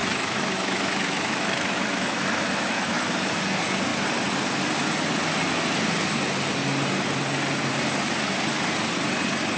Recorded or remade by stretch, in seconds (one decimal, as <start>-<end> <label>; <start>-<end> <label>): 0.0-3.3 remade; 3.3-9.6 recorded